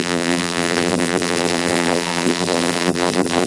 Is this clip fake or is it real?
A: fake